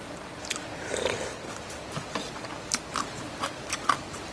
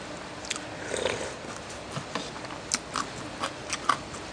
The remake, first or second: first